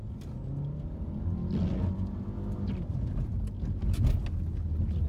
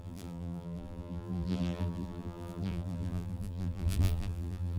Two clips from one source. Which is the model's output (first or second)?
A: second